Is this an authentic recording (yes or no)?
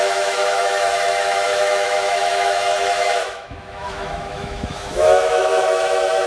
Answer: no